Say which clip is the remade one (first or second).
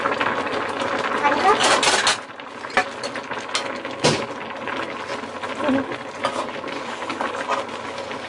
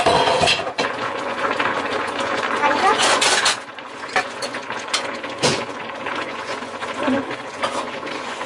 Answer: second